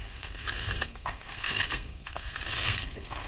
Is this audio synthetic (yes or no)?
yes